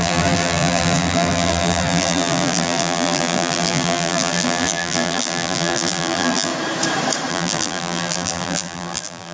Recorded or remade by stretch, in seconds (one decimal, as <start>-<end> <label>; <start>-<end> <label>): 0.0-6.5 remade; 6.5-7.3 recorded; 7.3-9.3 remade